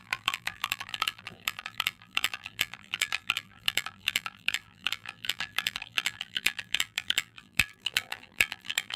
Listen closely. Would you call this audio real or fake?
fake